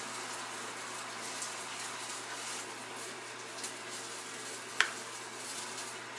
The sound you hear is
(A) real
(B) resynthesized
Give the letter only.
A